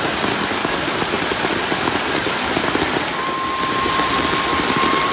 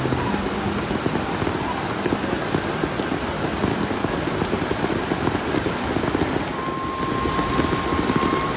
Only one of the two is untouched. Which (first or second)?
second